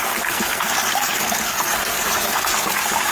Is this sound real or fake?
fake